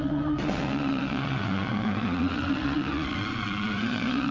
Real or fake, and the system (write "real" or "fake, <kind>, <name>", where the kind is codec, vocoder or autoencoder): fake, vocoder, WaveNeXt